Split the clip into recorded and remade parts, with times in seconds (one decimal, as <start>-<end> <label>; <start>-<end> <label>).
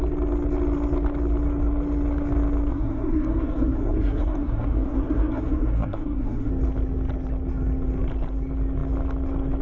0.0-2.7 recorded; 2.7-6.5 remade; 6.5-9.6 recorded